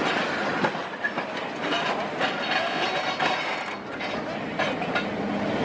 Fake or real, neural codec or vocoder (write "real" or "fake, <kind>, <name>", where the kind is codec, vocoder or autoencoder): real